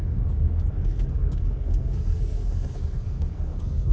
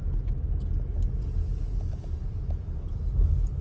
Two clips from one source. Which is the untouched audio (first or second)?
second